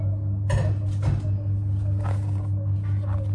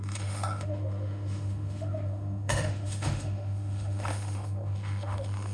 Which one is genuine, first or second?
first